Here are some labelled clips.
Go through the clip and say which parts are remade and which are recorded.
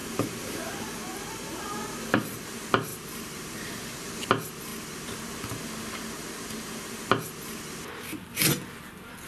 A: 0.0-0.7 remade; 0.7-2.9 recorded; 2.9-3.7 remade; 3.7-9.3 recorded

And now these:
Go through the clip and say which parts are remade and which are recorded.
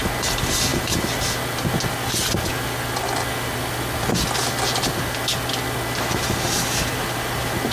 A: 0.0-7.7 recorded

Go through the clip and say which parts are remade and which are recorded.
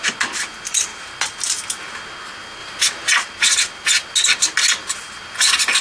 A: 0.0-2.6 recorded; 2.6-3.1 remade; 3.1-5.8 recorded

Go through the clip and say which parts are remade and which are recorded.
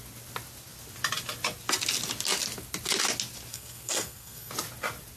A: 0.0-3.5 recorded; 3.5-4.5 remade; 4.5-5.2 recorded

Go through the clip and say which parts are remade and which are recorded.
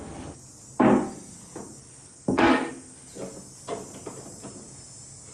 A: 0.0-2.1 recorded; 2.1-2.7 remade; 2.7-5.3 recorded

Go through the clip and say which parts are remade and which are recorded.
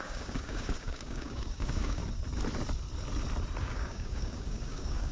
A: 0.0-2.0 remade; 2.0-3.6 recorded; 3.6-5.1 remade